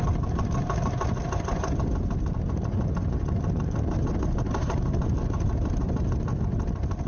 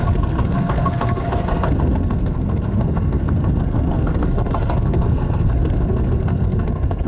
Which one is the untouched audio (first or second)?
first